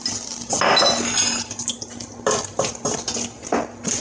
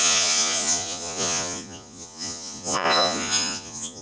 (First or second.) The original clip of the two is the first